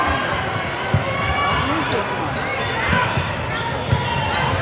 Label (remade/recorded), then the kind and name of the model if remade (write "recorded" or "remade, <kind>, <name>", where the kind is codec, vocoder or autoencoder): recorded